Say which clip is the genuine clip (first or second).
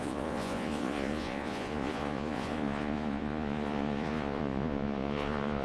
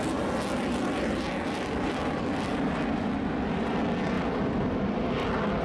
second